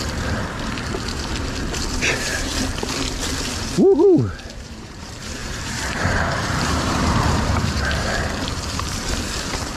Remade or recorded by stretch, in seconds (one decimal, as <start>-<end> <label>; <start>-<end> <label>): 0.0-1.3 remade; 1.3-2.1 recorded; 2.1-2.5 remade; 2.5-4.6 recorded; 4.6-9.8 remade